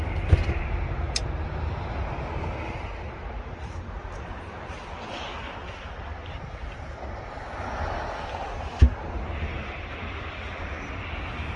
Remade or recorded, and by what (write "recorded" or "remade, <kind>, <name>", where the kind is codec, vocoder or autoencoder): recorded